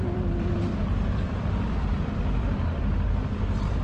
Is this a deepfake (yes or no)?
yes